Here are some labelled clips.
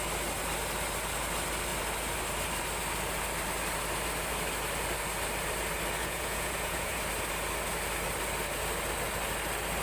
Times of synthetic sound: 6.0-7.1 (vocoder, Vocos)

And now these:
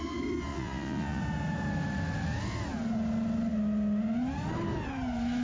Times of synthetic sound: 0.5-1.2 (vocoder, Vocos)

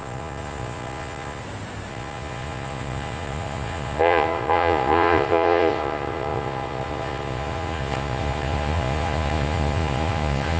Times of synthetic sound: 0.0-1.4 (vocoder, Vocos); 1.9-10.6